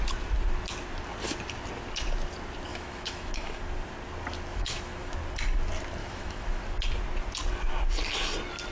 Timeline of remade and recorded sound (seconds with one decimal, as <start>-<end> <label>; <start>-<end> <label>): 0.0-2.7 recorded; 2.7-3.6 remade; 3.6-4.5 recorded; 4.5-5.1 remade; 5.1-6.0 recorded; 6.0-6.6 remade; 6.6-8.7 recorded